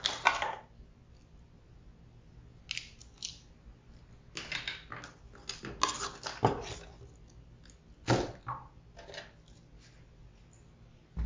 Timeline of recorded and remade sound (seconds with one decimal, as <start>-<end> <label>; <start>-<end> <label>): 0.0-11.3 recorded

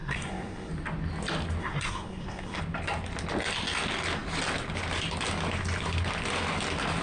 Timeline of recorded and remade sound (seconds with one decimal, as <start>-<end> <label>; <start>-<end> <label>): 0.0-0.7 remade; 0.7-1.6 recorded; 1.6-2.6 remade; 2.6-7.0 recorded

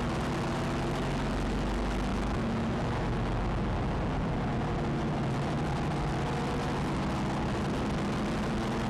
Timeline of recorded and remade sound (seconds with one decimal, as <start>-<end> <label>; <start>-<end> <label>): 0.0-2.1 recorded; 2.1-3.0 remade; 3.0-8.9 recorded